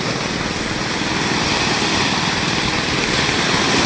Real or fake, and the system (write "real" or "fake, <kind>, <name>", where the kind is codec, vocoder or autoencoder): real